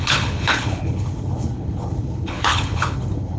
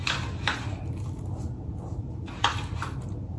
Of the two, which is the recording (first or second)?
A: second